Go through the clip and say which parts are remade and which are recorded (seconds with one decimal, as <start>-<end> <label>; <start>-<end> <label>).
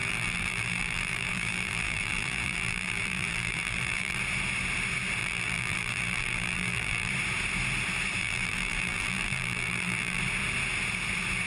0.0-4.2 remade; 4.2-5.2 recorded; 5.2-7.1 remade; 7.1-8.2 recorded; 8.2-10.2 remade; 10.2-11.5 recorded